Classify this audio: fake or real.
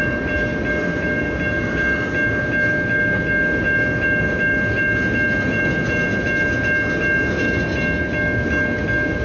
real